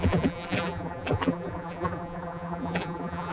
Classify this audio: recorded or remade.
remade